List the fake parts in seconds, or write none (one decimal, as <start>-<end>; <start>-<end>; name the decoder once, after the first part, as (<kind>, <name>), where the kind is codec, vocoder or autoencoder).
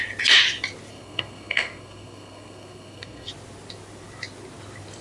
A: 0.9-3.3 (codec, SNAC)